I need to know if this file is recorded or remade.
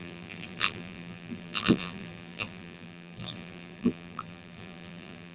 remade